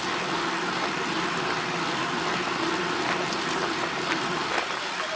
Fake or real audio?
real